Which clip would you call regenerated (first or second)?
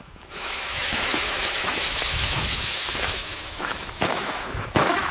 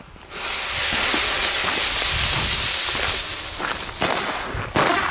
first